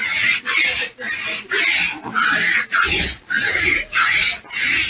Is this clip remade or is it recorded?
recorded